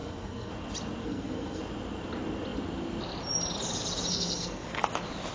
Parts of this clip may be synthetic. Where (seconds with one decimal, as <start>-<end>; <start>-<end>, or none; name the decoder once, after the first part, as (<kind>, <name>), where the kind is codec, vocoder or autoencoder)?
0.0-0.5 (codec, SNAC); 1.0-1.6; 4.1-4.8